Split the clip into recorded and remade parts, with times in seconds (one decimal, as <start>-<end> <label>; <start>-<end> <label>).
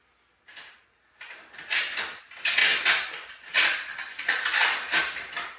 0.0-5.6 recorded